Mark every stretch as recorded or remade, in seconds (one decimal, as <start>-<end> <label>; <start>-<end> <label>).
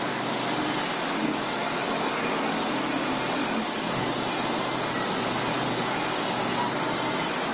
0.0-1.2 recorded; 1.2-2.7 remade; 2.7-3.4 recorded; 3.4-4.1 remade; 4.1-5.5 recorded; 5.5-6.0 remade; 6.0-7.5 recorded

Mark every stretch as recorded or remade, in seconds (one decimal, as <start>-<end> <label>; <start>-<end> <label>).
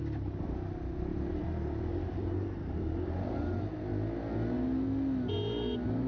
0.0-1.1 recorded; 1.1-3.8 remade; 3.8-6.1 recorded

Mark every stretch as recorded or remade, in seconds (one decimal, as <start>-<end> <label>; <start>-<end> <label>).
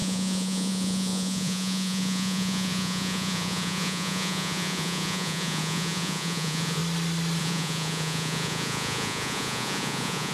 0.0-6.8 remade; 6.8-7.4 recorded; 7.4-10.3 remade